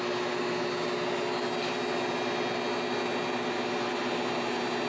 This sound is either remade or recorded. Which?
recorded